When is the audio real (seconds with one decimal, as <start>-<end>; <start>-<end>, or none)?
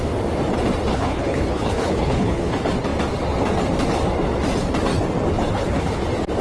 0.0-0.9; 2.5-5.5; 6.0-6.4